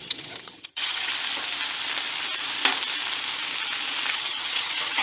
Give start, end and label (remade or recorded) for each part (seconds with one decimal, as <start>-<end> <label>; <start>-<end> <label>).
0.0-1.1 remade; 1.1-4.1 recorded; 4.1-5.0 remade